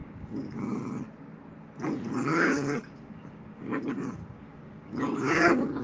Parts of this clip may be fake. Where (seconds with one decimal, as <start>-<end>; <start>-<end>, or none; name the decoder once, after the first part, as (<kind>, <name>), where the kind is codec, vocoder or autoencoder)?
0.0-0.6 (codec, DAC); 2.3-5.8